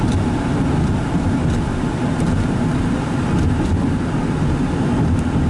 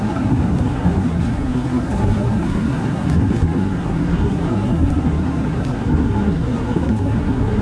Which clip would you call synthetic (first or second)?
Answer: second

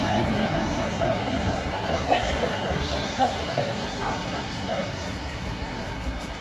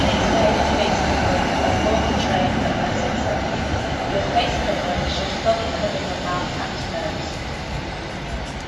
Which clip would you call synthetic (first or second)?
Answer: first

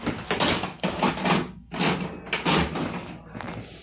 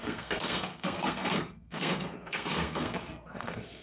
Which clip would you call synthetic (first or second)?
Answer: second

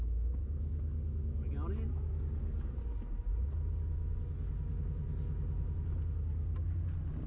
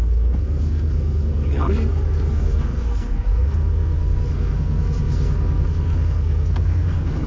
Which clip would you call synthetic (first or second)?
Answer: second